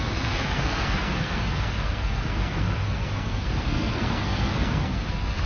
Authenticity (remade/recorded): remade